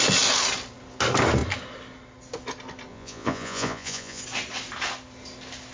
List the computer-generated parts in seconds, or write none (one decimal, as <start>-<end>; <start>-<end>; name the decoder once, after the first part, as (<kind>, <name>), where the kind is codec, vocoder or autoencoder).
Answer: 2.9-4.2 (vocoder, Vocos)